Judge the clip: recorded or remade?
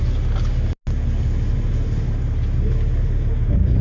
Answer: recorded